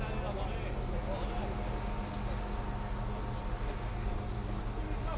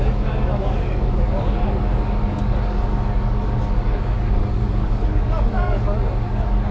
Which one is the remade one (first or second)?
second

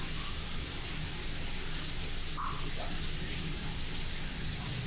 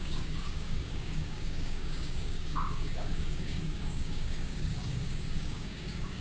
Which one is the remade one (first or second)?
second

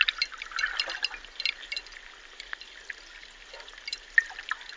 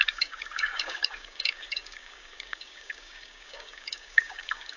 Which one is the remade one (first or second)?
second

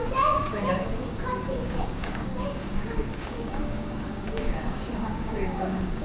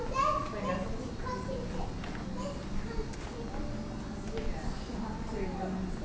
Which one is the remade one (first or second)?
first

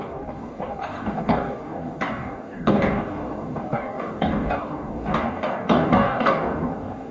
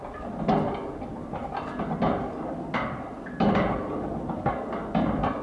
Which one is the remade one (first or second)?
first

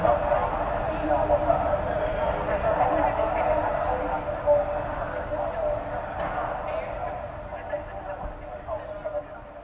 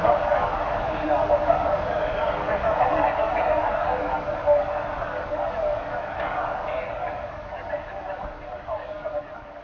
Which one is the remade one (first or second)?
second